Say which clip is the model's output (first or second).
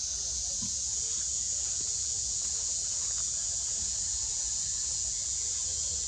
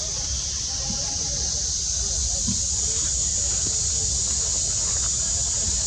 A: first